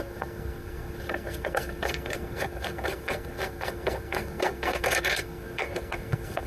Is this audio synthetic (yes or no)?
yes